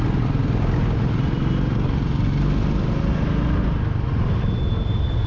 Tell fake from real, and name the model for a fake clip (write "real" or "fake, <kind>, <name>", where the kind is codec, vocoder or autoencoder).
real